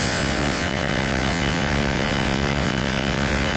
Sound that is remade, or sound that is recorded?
remade